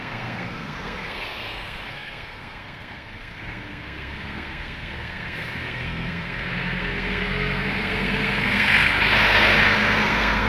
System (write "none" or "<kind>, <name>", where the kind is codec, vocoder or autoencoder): codec, SNAC